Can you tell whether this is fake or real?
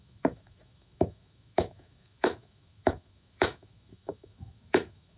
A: fake